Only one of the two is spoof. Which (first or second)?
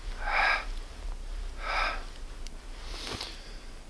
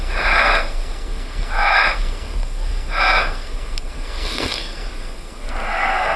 second